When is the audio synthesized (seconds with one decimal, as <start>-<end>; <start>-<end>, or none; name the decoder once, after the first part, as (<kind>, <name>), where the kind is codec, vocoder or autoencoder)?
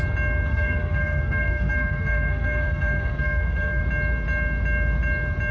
0.5-3.8 (codec, SNAC)